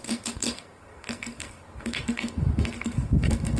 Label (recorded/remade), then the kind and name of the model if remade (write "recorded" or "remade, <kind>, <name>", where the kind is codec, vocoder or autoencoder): remade, codec, SNAC